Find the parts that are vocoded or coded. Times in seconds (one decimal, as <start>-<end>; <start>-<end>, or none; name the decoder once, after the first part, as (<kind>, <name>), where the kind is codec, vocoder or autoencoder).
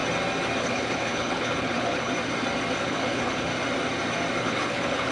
0.6-2.1 (codec, HILCodec); 2.8-3.5; 4.4-5.1